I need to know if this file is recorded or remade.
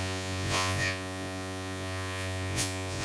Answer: remade